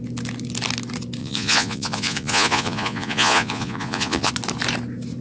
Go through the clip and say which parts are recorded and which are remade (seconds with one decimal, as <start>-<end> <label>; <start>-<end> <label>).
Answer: 0.0-1.2 recorded; 1.2-4.3 remade; 4.3-5.2 recorded